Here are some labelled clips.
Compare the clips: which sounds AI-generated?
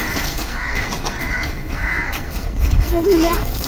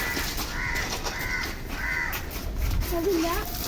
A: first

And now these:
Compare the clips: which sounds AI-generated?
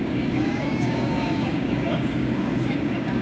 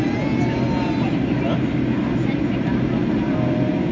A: first